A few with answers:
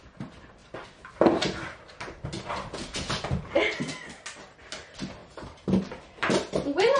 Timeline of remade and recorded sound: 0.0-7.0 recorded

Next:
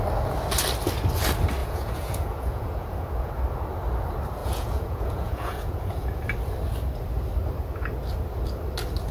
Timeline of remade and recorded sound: 0.0-1.6 recorded; 1.6-3.3 remade; 3.3-4.4 recorded; 4.4-6.2 remade; 6.2-9.1 recorded

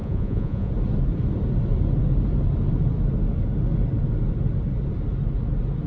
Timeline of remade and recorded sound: 0.0-0.7 remade; 0.7-5.9 recorded

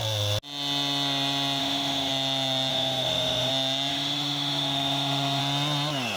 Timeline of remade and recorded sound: 0.0-1.6 recorded; 1.6-2.1 remade; 2.1-2.7 recorded; 2.7-3.5 remade; 3.5-3.9 recorded; 3.9-5.4 remade; 5.4-6.2 recorded

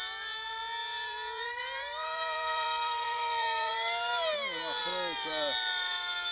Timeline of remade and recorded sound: 0.0-0.8 recorded; 0.8-3.7 remade; 3.7-6.3 recorded

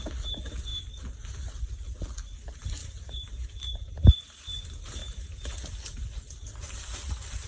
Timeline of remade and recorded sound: 0.0-0.7 recorded; 0.7-1.6 remade; 1.6-2.8 recorded; 2.8-4.4 remade; 4.4-7.5 recorded